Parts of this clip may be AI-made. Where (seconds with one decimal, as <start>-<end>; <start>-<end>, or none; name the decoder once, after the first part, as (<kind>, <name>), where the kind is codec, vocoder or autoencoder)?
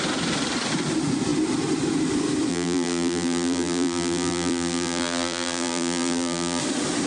2.5-6.6 (vocoder, BigVGAN v2)